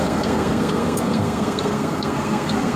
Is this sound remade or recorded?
remade